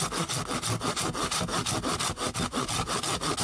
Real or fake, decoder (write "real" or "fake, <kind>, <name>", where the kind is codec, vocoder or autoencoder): real